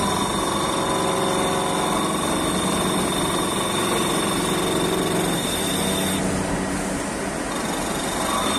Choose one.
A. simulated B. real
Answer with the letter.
B